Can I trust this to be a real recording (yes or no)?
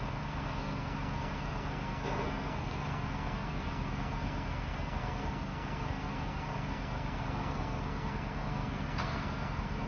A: no